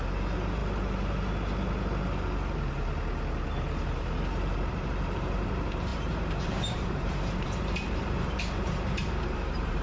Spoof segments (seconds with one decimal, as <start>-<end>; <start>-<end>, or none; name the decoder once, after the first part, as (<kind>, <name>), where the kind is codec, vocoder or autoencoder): 0.0-0.6 (vocoder, BigVGAN v2); 4.7-9.8

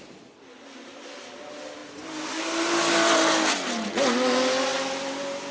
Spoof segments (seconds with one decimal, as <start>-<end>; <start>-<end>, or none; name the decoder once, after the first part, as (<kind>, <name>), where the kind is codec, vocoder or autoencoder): none